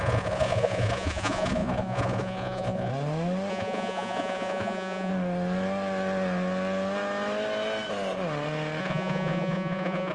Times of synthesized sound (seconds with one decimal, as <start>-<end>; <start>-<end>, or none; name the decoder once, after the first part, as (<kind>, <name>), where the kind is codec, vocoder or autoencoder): 0.0-2.9 (vocoder, Vocos); 3.5-5.1; 8.8-10.1